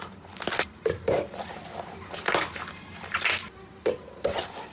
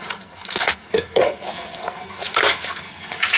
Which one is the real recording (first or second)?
first